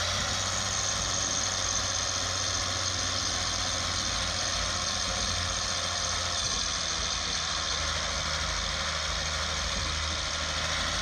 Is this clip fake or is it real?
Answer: real